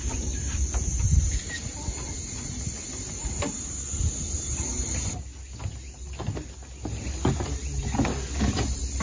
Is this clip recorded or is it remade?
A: recorded